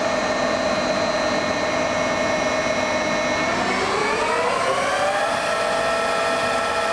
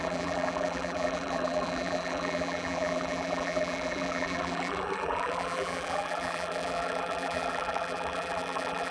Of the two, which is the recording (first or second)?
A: first